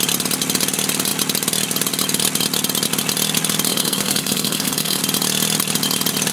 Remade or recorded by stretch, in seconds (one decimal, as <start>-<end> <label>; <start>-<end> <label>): 0.0-3.7 recorded; 3.7-5.0 remade; 5.0-6.3 recorded